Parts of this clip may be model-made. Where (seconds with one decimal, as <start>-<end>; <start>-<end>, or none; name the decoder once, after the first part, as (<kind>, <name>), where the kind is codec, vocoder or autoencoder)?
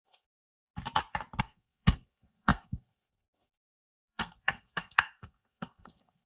0.0-0.7 (codec, SNAC); 1.4-6.3